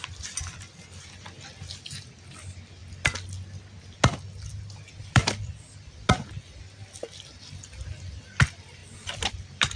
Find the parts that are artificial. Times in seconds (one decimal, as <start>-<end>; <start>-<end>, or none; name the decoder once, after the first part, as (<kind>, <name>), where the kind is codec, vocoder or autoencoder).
5.0-6.1 (vocoder, BigVGAN v2)